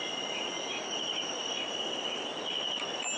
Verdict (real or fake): real